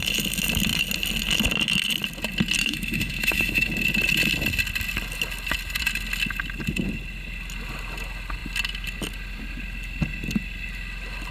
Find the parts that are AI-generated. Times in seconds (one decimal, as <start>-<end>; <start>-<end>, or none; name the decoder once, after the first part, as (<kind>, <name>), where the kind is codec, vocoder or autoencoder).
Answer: 2.6-3.7 (autoencoder, DAC-VAE)